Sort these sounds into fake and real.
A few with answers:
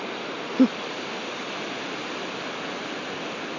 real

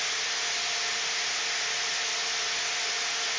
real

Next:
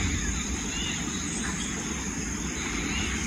real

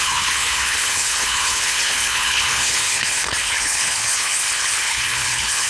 fake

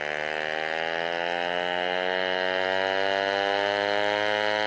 real